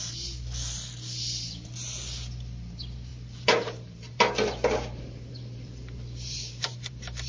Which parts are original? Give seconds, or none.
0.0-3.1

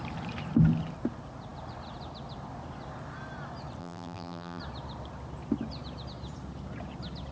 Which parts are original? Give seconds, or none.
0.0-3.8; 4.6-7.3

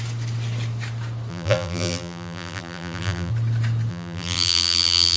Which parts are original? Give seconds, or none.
0.0-1.3; 3.3-3.9

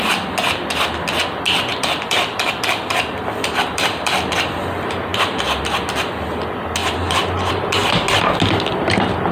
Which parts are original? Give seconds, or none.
0.0-1.7; 4.6-6.8; 7.5-9.3